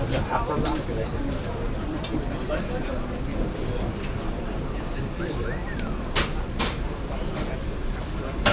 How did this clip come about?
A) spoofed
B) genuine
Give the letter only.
A